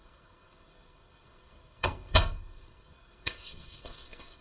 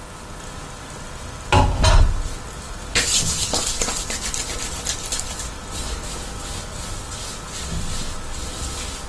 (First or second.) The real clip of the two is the second